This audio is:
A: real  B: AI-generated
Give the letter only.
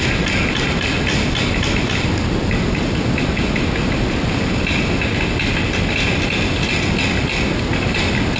A